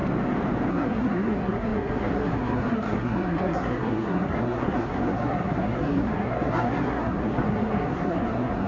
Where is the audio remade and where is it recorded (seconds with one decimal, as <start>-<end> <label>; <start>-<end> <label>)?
0.0-0.7 recorded; 0.7-8.7 remade